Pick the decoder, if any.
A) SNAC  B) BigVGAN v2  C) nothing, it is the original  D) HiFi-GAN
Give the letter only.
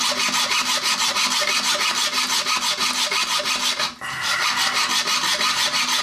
C